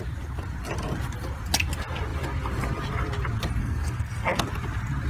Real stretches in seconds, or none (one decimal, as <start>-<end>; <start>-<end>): 0.0-3.6; 4.4-5.1